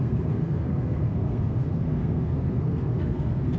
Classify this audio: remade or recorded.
remade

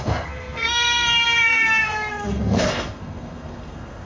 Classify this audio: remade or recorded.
remade